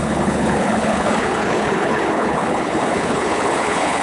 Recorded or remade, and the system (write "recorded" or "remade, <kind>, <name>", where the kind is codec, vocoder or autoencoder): remade, codec, HILCodec